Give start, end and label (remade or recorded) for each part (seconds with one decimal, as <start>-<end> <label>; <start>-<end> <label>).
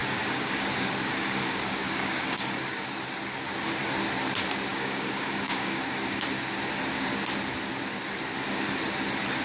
0.0-2.8 remade; 2.8-4.7 recorded; 4.7-6.2 remade; 6.2-9.4 recorded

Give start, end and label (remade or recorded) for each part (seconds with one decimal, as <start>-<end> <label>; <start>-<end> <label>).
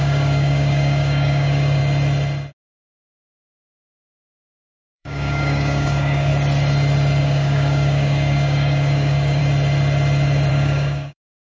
0.0-1.8 remade; 1.8-4.0 recorded; 4.0-6.3 remade; 6.3-7.2 recorded; 7.2-9.4 remade; 9.4-10.5 recorded; 10.5-11.4 remade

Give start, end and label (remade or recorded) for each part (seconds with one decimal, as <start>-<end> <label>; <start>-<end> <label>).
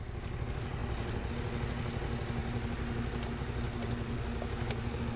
0.0-5.2 recorded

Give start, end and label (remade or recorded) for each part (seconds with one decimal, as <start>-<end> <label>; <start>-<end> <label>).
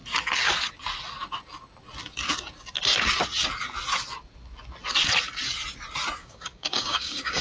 0.0-6.2 recorded; 6.2-7.4 remade